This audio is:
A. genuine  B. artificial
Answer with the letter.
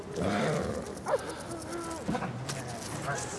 A